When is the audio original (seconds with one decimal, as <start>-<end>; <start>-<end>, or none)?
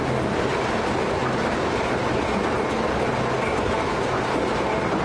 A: 0.0-5.0